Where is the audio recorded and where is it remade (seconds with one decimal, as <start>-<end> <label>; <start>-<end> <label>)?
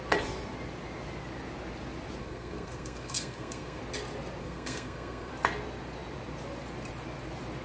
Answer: 0.0-2.2 recorded; 2.2-3.8 remade; 3.8-4.4 recorded; 4.4-5.3 remade; 5.3-7.6 recorded